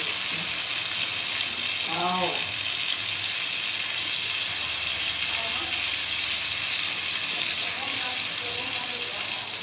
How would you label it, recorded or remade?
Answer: recorded